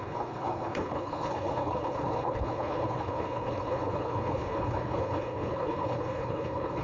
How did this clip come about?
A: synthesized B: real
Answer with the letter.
A